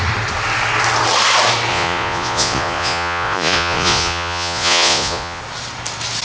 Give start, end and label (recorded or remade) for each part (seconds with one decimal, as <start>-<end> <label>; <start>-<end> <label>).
0.0-1.7 recorded; 1.7-5.4 remade; 5.4-6.2 recorded